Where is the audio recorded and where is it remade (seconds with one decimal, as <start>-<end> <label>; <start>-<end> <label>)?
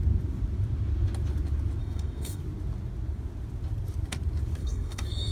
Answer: 0.0-1.8 recorded; 1.8-2.4 remade; 2.4-4.6 recorded; 4.6-5.3 remade